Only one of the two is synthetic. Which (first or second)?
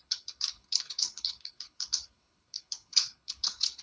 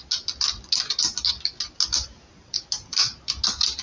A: first